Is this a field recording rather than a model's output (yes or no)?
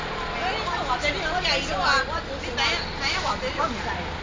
yes